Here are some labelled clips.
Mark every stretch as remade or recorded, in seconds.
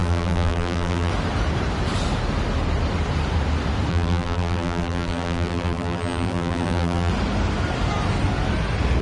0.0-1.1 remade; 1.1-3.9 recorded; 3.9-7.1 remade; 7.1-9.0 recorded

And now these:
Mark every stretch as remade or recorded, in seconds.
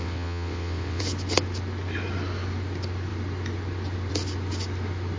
0.0-1.0 remade; 1.0-5.2 recorded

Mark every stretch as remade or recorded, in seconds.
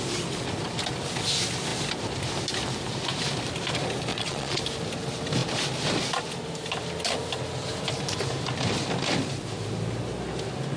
0.0-4.1 recorded; 4.1-4.6 remade; 4.6-10.8 recorded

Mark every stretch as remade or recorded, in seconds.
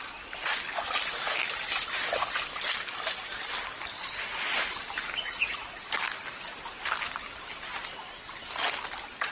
0.0-9.3 recorded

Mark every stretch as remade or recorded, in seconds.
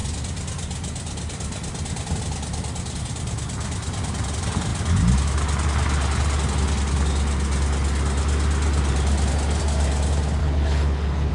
0.0-10.4 recorded; 10.4-11.3 remade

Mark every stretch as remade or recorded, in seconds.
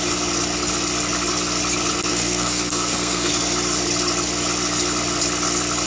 0.0-2.1 recorded; 2.1-3.3 remade; 3.3-5.9 recorded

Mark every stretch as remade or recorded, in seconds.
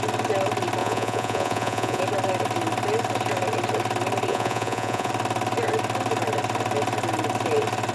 0.0-0.8 recorded; 0.8-2.0 remade; 2.0-4.3 recorded; 4.3-5.1 remade; 5.1-7.9 recorded